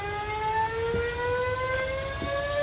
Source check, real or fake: real